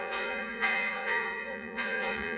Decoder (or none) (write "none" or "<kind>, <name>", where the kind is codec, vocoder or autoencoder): vocoder, Vocos